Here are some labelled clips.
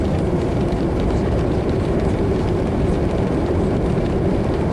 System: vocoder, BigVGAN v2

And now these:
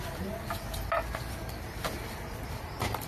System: none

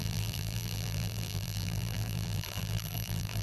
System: vocoder, BigVGAN v2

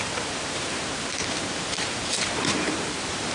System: vocoder, BigVGAN v2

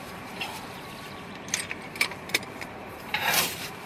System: vocoder, BigVGAN v2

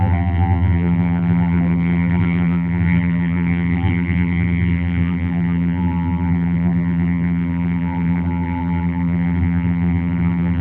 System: vocoder, BigVGAN v2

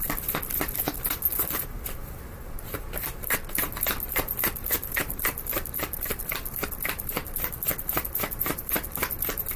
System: vocoder, BigVGAN v2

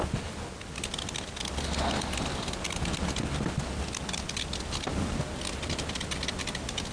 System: none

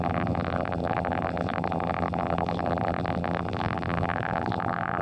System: vocoder, BigVGAN v2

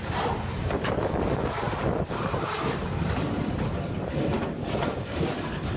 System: vocoder, BigVGAN v2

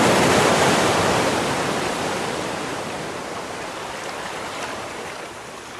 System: vocoder, BigVGAN v2